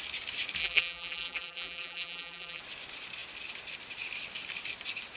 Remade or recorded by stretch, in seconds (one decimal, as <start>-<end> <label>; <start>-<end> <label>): 0.0-0.6 recorded; 0.6-2.6 remade; 2.6-5.2 recorded